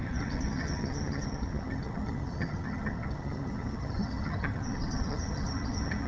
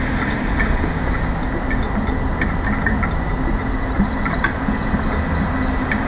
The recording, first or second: second